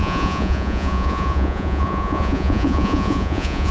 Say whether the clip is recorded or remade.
remade